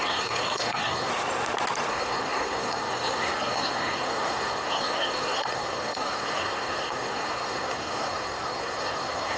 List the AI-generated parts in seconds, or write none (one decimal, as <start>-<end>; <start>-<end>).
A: 0.0-1.1; 1.9-9.4